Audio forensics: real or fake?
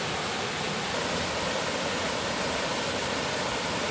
real